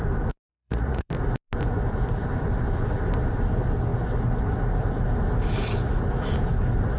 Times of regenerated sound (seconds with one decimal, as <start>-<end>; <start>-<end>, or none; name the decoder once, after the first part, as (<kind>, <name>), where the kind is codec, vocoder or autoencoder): 0.5-1.1 (vocoder, Vocos)